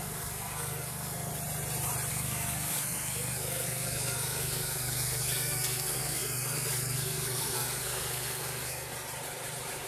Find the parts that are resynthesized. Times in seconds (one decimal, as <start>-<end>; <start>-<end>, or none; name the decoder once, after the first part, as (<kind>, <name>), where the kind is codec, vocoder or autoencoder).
0.0-1.3 (codec, SNAC); 2.1-8.9